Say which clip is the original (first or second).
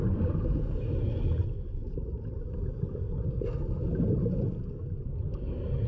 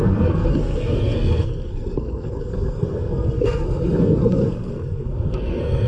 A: first